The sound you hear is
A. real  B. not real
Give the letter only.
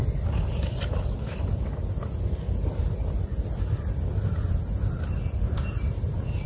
A